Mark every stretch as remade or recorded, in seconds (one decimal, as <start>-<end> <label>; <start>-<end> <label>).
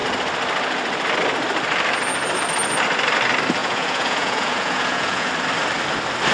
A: 0.0-3.6 recorded; 3.6-5.3 remade; 5.3-6.3 recorded